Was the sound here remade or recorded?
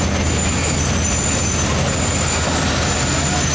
recorded